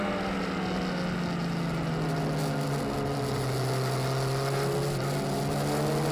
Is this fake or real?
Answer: real